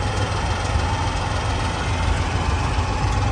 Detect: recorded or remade recorded